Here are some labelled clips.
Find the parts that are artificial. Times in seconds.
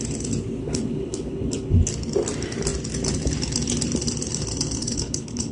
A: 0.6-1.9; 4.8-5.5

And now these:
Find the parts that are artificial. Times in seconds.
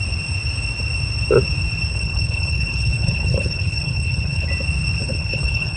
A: 1.9-4.5; 5.0-5.8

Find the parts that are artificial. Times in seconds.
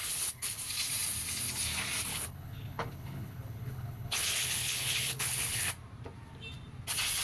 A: 0.0-0.6; 2.1-5.7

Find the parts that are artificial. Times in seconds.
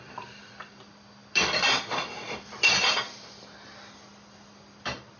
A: none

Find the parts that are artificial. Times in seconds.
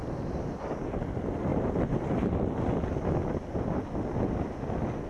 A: none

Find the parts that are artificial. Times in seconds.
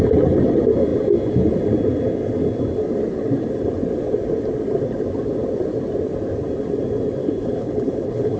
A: 7.2-8.4